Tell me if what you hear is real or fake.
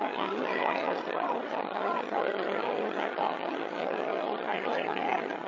fake